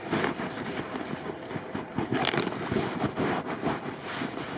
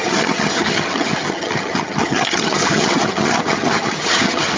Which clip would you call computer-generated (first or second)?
second